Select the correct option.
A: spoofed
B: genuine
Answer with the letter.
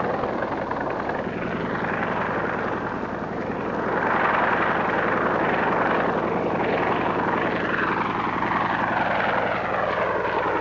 B